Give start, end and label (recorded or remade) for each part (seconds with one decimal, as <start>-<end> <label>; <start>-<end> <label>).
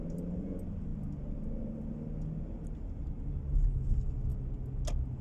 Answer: 0.0-5.2 recorded